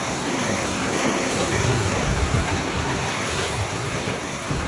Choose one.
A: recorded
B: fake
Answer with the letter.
B